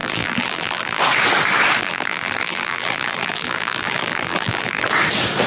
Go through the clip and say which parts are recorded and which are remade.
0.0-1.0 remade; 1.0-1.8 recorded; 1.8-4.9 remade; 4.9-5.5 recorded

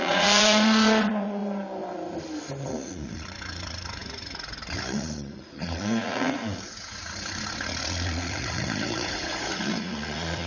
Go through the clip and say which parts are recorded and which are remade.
0.0-1.4 remade; 1.4-2.6 recorded; 2.6-10.5 remade